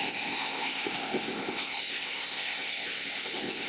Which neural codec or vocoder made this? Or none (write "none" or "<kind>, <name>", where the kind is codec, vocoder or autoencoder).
codec, ZipCodec